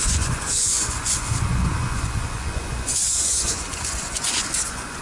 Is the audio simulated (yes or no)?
yes